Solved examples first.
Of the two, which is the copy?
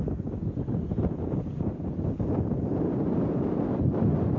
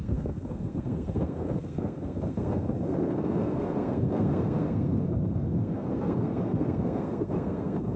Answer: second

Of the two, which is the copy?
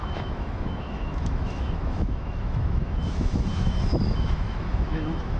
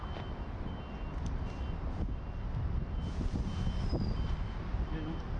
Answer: first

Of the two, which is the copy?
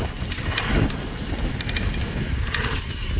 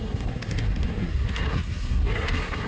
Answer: second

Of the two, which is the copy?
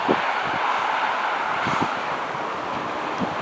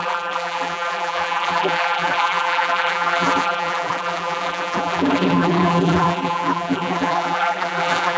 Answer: second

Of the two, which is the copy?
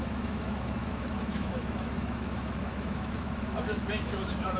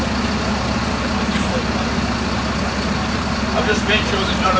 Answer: first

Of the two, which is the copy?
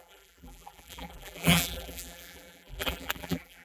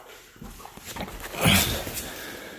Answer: first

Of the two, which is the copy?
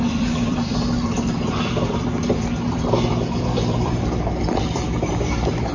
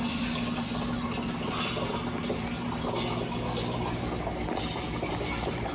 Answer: first